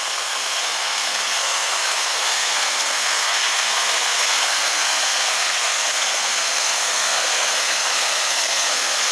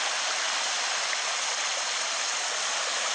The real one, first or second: second